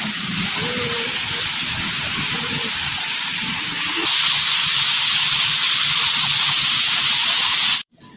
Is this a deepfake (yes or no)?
yes